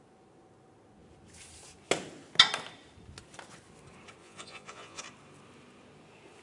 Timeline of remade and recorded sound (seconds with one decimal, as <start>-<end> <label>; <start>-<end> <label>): 0.0-4.2 recorded; 4.2-5.0 remade; 5.0-6.4 recorded